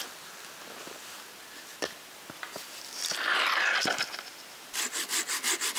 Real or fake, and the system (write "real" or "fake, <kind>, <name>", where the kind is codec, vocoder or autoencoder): real